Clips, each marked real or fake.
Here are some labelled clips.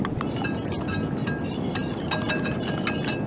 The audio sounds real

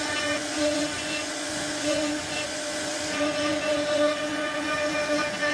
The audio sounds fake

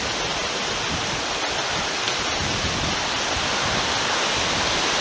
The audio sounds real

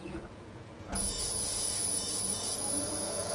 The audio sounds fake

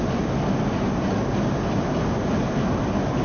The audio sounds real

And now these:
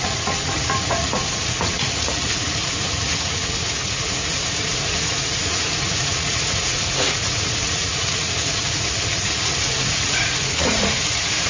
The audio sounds fake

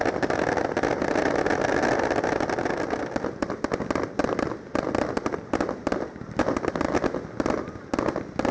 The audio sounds real